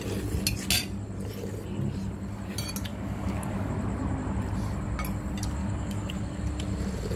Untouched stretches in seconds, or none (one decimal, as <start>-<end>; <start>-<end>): 0.0-2.9; 3.7-5.6; 6.4-7.2